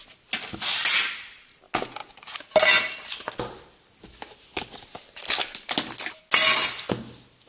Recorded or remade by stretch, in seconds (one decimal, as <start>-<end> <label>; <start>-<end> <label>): 0.0-7.5 recorded